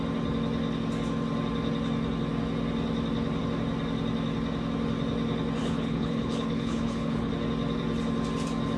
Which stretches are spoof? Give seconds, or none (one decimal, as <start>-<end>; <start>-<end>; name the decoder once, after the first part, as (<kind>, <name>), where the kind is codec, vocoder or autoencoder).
5.6-7.3 (codec, HILCodec)